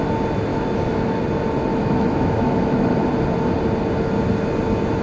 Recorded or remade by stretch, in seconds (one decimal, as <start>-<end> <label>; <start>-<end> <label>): 0.0-0.5 recorded; 0.5-1.2 remade; 1.2-1.7 recorded; 1.7-3.0 remade; 3.0-5.0 recorded